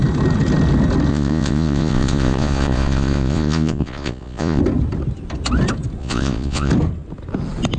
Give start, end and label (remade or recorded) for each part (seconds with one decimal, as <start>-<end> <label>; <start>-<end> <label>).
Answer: 0.0-1.1 recorded; 1.1-4.6 remade; 4.6-6.0 recorded; 6.0-6.7 remade; 6.7-7.8 recorded